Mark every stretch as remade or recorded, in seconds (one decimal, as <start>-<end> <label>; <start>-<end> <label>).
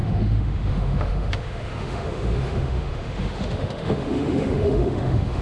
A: 0.0-5.4 remade